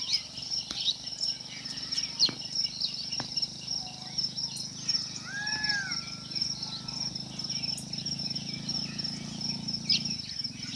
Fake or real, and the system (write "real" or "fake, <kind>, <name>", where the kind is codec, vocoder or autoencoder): real